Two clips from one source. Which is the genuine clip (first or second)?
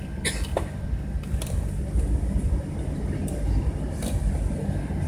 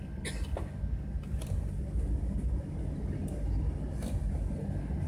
second